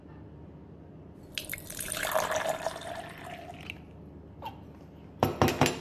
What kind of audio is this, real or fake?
real